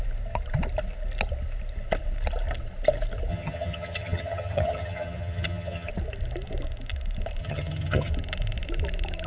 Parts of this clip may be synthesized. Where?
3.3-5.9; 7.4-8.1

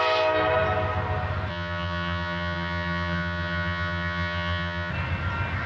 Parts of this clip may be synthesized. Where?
1.5-4.9

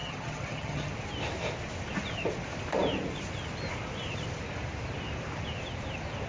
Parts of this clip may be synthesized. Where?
0.0-0.9

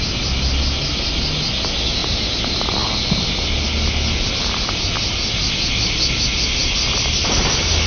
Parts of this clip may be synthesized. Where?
none

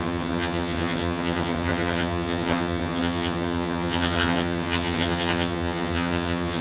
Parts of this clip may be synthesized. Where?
0.0-6.6

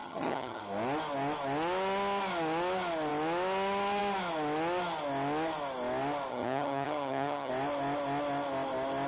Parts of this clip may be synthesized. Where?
0.0-0.6; 6.3-7.5

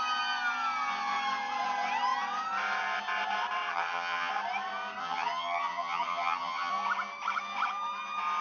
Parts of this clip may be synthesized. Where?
3.7-4.3; 5.0-6.7